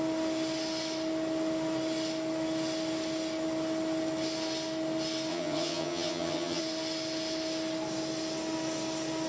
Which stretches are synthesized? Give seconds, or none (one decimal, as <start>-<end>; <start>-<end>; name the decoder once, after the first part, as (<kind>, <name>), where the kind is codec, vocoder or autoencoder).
5.3-6.6 (vocoder, HiFi-GAN)